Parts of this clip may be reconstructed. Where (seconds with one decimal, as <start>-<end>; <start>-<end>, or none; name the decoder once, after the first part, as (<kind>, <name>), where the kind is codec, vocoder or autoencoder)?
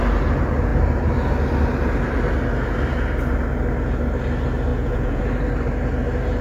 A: 4.7-5.2 (vocoder, Vocos)